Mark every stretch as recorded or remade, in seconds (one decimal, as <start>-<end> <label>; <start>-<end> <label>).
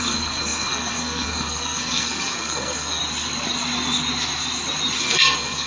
0.0-3.0 remade; 3.0-5.0 recorded; 5.0-5.7 remade